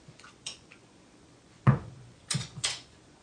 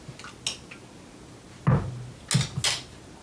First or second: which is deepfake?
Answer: first